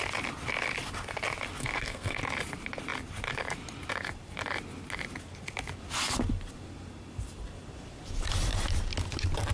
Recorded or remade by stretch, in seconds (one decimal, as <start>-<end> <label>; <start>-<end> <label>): 0.0-1.6 recorded; 1.6-2.2 remade; 2.2-9.5 recorded